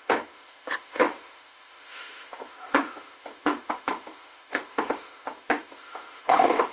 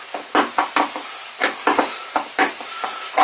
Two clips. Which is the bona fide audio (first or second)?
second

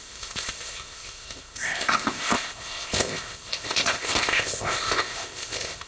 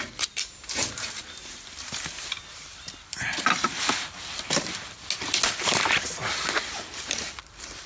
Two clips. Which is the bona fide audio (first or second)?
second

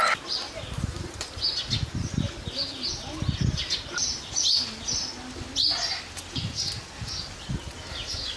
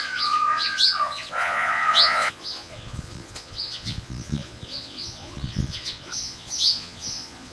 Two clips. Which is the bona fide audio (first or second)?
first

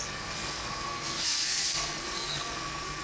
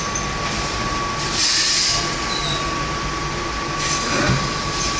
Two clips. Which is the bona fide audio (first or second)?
second